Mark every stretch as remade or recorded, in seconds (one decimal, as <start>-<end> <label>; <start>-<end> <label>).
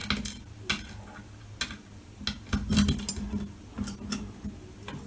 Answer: 0.0-5.1 recorded